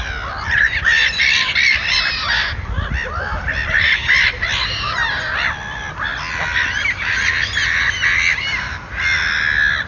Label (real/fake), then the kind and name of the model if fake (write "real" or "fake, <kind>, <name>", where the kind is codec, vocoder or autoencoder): real